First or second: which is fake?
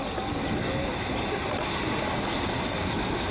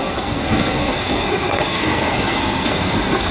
second